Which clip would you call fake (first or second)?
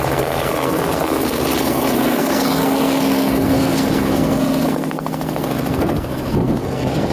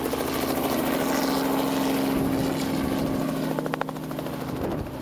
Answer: first